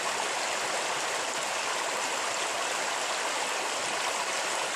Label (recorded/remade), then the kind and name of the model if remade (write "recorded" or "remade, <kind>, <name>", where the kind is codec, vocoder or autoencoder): recorded